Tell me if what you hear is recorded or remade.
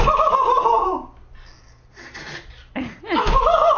recorded